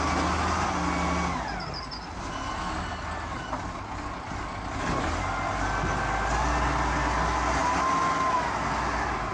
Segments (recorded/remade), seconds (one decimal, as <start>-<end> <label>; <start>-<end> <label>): 0.0-9.3 recorded

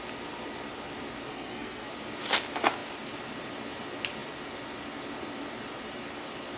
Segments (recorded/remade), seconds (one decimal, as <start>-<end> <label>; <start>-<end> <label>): 0.0-1.3 recorded; 1.3-1.9 remade; 1.9-6.6 recorded